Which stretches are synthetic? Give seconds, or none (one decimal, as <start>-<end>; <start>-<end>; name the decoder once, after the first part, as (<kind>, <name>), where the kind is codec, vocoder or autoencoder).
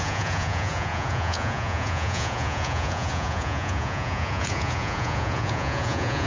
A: 0.0-6.3 (vocoder, Vocos)